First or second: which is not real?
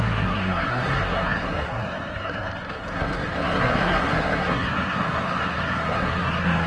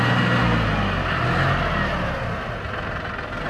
first